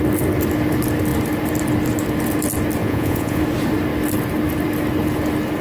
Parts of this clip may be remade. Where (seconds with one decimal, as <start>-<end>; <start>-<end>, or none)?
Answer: 2.8-3.4